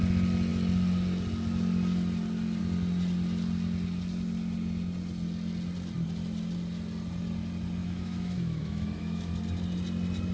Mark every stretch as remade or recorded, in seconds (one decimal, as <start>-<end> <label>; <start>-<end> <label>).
0.0-7.8 recorded; 7.8-9.3 remade; 9.3-10.3 recorded